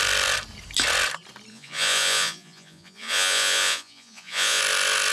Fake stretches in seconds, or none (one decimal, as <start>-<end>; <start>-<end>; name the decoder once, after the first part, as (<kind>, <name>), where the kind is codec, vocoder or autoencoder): 1.5-4.6 (vocoder, Vocos)